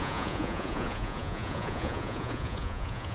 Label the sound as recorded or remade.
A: remade